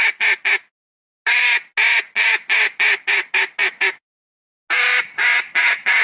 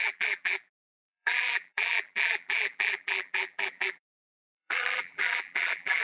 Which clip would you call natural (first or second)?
first